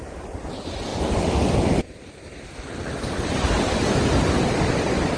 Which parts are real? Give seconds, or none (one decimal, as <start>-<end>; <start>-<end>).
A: 0.0-5.2